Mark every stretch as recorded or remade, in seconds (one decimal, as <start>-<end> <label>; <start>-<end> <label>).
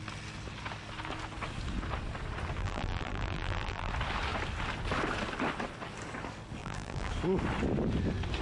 0.0-2.6 recorded; 2.6-3.9 remade; 3.9-6.6 recorded; 6.6-7.1 remade; 7.1-8.4 recorded